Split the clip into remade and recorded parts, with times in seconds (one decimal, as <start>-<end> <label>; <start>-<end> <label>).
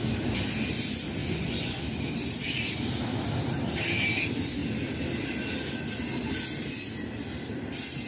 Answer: 0.0-1.2 recorded; 1.2-1.8 remade; 1.8-8.1 recorded